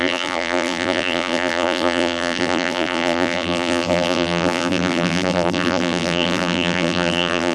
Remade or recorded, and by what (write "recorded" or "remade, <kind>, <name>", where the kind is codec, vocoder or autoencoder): remade, vocoder, BigVGAN v2